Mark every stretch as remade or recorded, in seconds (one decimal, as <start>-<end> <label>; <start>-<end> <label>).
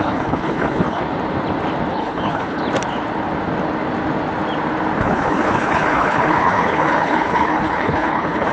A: 0.0-1.0 remade; 1.0-1.9 recorded; 1.9-2.6 remade; 2.6-5.0 recorded; 5.0-8.5 remade